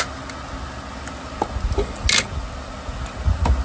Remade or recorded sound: recorded